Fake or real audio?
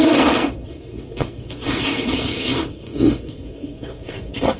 fake